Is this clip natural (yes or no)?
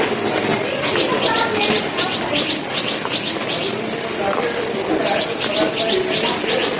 yes